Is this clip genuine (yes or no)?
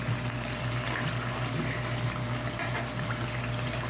yes